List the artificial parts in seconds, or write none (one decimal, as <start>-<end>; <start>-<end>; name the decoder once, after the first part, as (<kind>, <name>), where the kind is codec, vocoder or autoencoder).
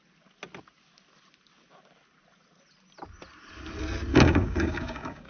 4.1-5.3 (codec, DAC)